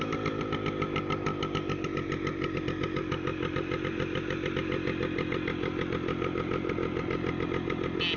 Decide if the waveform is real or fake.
real